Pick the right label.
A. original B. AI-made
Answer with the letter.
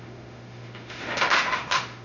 B